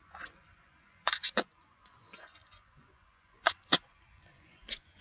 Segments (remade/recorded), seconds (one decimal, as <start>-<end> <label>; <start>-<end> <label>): 0.0-5.0 remade